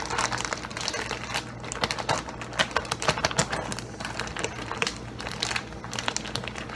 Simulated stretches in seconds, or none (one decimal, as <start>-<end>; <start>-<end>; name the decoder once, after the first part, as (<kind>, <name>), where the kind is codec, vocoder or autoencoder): none